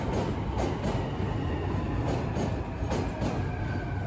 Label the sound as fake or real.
real